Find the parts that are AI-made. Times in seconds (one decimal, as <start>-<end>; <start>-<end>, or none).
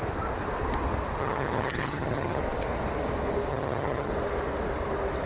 1.2-2.4; 3.5-4.1